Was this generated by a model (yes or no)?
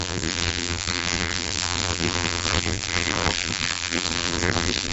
yes